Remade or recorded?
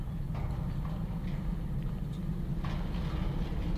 recorded